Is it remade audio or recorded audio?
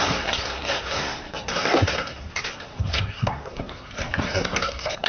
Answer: remade